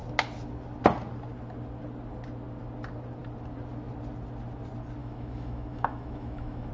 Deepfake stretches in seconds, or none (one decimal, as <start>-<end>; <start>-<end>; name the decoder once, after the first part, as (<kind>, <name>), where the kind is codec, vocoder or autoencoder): 5.0-6.7 (autoencoder, DAC-VAE)